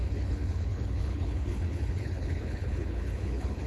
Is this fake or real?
fake